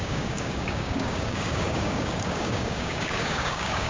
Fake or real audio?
fake